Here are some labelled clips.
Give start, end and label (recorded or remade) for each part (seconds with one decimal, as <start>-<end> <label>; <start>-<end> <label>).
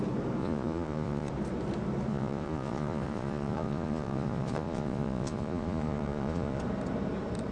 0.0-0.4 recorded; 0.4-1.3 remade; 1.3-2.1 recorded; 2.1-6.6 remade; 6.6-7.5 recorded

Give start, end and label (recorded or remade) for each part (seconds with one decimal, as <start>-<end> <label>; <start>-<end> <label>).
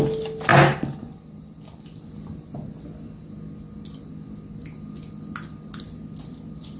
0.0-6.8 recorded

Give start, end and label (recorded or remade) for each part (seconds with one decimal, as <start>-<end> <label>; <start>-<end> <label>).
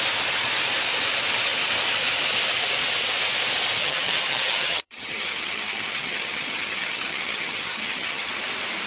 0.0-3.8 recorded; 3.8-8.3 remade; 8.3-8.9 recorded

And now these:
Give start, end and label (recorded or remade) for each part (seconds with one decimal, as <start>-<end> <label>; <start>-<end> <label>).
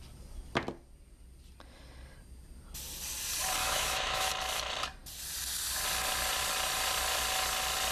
0.0-3.6 recorded; 3.6-4.3 remade; 4.3-7.9 recorded